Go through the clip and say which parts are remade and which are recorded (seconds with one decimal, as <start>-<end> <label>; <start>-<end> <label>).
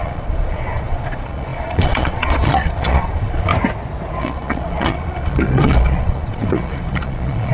0.0-3.5 remade; 3.5-4.2 recorded; 4.2-7.5 remade